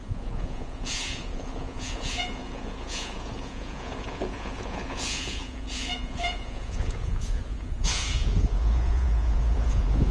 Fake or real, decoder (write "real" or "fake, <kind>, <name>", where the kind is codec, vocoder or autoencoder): fake, vocoder, Vocos